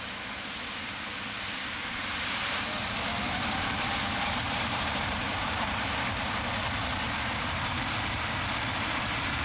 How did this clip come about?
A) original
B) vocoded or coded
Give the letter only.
B